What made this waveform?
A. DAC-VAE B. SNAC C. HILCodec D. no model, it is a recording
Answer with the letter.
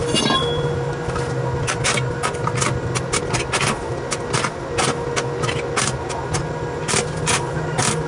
D